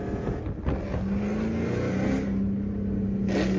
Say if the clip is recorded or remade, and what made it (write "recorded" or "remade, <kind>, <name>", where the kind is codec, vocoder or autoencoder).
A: recorded